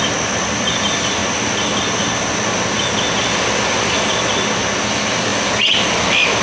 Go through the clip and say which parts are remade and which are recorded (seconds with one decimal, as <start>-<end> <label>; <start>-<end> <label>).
0.0-6.4 recorded